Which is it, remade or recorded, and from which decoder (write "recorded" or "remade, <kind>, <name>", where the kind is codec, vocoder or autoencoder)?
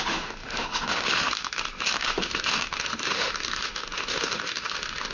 remade, autoencoder, DAC-VAE